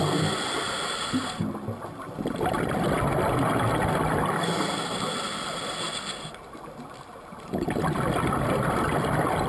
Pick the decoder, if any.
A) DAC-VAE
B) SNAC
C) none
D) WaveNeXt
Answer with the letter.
C